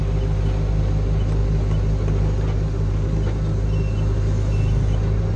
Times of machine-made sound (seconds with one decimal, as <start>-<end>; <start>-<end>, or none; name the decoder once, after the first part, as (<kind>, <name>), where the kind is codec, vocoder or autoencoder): none

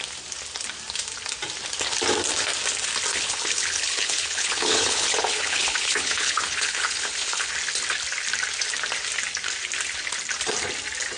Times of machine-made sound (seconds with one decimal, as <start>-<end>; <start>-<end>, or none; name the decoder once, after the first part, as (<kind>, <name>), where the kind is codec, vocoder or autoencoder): 3.1-7.5 (codec, HILCodec)

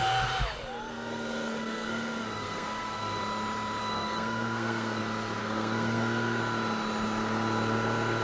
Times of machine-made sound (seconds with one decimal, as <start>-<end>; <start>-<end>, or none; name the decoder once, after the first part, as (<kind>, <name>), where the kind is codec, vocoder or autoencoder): 0.9-3.2 (codec, SNAC); 3.8-5.0; 5.4-6.4